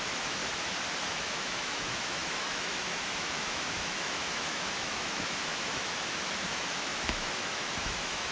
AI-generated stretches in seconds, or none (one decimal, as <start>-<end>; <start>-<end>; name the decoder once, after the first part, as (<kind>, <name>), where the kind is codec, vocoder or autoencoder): 0.0-0.4 (autoencoder, DAC-VAE); 1.1-8.3